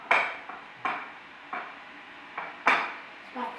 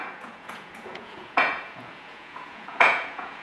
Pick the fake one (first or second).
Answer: second